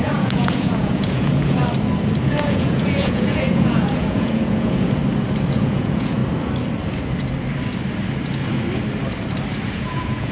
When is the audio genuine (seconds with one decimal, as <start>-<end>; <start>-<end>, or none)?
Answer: 1.6-2.2; 5.0-5.5; 6.2-9.7